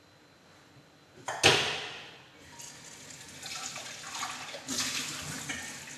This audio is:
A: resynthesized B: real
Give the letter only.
B